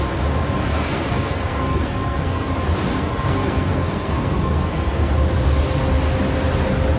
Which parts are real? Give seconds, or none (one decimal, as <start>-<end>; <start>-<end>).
0.0-0.7; 2.5-2.9; 5.1-7.0